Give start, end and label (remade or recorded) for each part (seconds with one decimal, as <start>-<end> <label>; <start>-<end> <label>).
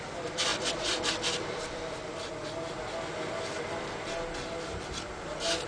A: 0.0-0.5 recorded; 0.5-2.5 remade; 2.5-5.7 recorded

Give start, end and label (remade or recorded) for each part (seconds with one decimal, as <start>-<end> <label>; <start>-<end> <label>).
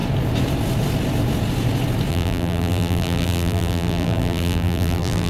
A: 0.0-2.1 recorded; 2.1-5.3 remade